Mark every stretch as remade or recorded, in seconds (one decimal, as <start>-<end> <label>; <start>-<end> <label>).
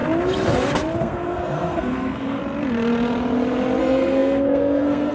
0.0-1.0 recorded; 1.0-2.4 remade; 2.4-3.8 recorded; 3.8-5.1 remade